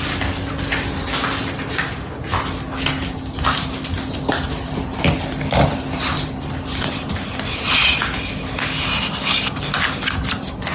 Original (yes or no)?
yes